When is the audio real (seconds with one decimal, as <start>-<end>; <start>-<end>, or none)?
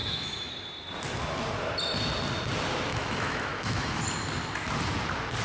0.5-2.9; 4.0-5.4